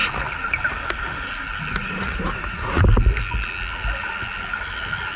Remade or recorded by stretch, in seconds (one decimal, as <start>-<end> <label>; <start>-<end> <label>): 0.0-1.8 recorded; 1.8-2.8 remade; 2.8-5.2 recorded